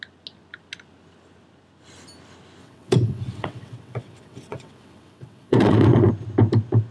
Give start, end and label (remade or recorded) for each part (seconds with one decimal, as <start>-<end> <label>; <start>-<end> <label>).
0.0-2.6 recorded; 2.6-6.1 remade; 6.1-6.9 recorded